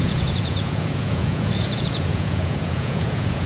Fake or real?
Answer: fake